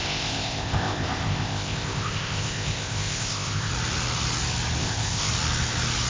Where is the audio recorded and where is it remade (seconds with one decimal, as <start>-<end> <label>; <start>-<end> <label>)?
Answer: 0.0-3.7 remade; 3.7-4.8 recorded; 4.8-5.3 remade; 5.3-6.1 recorded